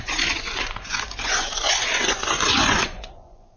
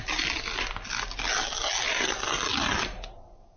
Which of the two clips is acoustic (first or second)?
second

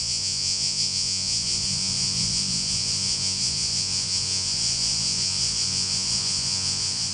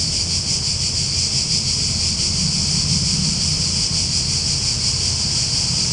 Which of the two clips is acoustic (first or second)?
second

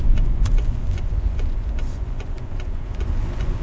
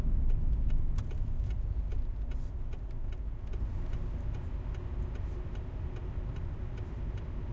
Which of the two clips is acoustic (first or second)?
second